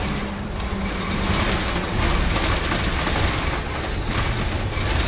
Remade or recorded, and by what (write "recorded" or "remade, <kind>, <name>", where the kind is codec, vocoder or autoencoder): recorded